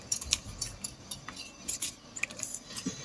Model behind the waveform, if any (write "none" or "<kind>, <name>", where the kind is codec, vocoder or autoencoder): none